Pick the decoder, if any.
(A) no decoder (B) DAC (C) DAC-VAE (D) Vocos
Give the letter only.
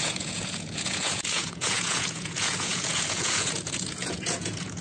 D